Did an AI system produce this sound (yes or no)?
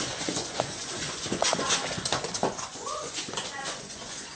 yes